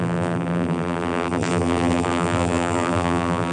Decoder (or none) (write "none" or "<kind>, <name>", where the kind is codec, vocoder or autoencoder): vocoder, BigVGAN v2